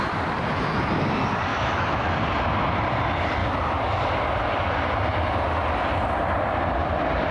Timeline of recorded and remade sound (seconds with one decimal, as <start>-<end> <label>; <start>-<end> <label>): 0.0-1.5 recorded; 1.5-2.1 remade; 2.1-7.3 recorded

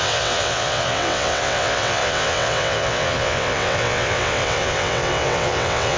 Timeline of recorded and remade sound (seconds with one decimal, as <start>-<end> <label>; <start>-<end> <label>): 0.0-6.0 remade

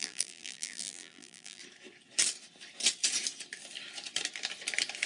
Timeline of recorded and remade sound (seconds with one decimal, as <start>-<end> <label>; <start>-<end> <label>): 0.0-1.6 remade; 1.6-5.1 recorded